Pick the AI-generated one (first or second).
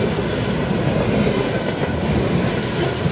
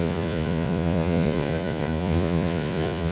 second